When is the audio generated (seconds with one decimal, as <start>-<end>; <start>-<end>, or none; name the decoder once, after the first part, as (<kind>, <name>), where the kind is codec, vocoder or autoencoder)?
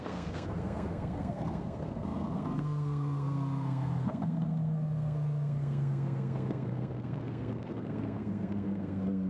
0.0-9.3 (codec, SNAC)